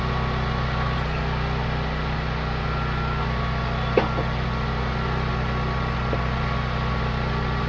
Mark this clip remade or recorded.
recorded